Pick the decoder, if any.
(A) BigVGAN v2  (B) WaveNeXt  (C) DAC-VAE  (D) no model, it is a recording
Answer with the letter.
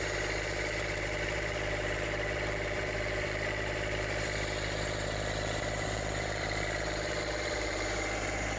A